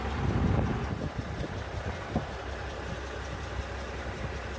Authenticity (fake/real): real